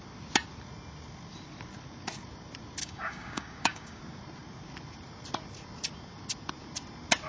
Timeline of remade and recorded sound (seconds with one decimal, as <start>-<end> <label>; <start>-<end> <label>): 0.0-2.8 recorded; 2.8-4.0 remade; 4.0-7.3 recorded